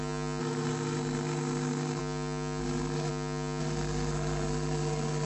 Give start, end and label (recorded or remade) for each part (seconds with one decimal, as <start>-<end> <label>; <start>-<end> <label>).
0.0-0.4 recorded; 0.4-2.0 remade; 2.0-2.6 recorded; 2.6-3.1 remade; 3.1-3.6 recorded; 3.6-5.3 remade

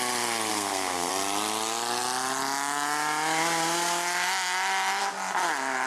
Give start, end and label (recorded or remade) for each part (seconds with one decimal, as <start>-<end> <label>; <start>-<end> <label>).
0.0-0.5 recorded; 0.5-1.1 remade; 1.1-5.9 recorded